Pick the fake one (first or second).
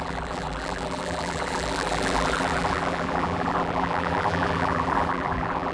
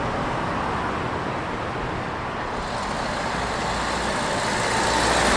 first